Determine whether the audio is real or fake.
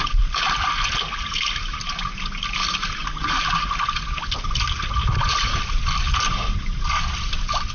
real